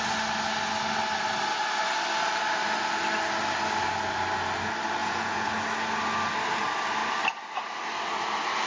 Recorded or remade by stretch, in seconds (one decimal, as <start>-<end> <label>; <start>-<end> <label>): 0.0-5.0 recorded; 5.0-5.5 remade; 5.5-8.7 recorded